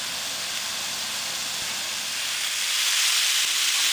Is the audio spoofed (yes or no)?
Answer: no